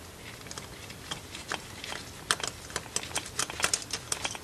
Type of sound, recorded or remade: recorded